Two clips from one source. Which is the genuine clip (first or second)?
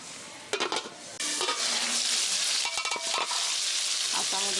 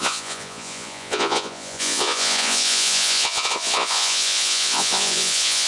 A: first